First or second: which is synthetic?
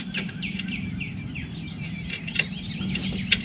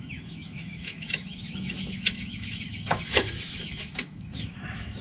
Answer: second